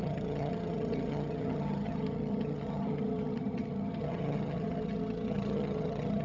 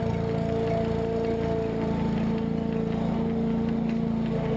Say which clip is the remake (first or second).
first